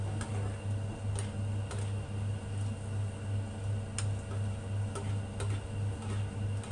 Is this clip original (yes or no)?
yes